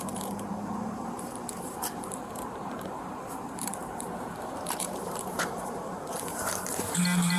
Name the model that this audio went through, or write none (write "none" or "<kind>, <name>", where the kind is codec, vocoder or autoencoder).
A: vocoder, BigVGAN v2